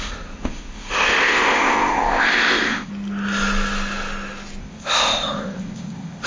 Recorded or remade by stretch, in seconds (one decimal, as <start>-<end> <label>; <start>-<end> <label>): 0.0-2.9 remade; 2.9-4.6 recorded; 4.6-6.3 remade